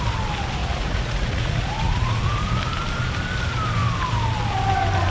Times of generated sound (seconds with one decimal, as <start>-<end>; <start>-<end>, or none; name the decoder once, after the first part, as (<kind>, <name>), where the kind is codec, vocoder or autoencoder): 0.6-2.4 (vocoder, Vocos)